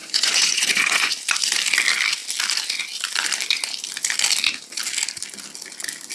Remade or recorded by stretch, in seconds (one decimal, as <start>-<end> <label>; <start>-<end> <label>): 0.0-1.1 remade; 1.1-6.1 recorded